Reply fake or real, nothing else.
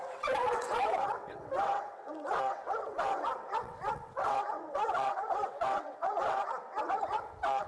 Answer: fake